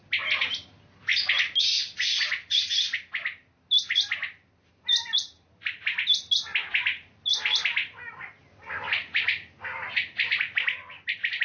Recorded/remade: recorded